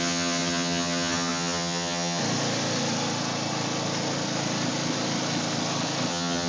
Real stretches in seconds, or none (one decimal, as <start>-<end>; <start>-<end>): 2.2-6.1